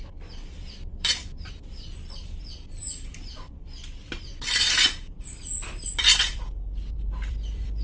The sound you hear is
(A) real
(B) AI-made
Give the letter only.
B